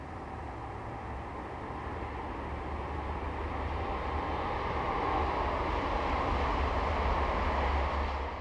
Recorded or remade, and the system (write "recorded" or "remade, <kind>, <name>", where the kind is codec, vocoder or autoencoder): recorded